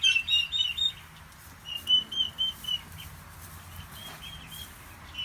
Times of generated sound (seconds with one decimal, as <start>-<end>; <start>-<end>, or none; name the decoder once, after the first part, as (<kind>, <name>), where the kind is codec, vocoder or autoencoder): none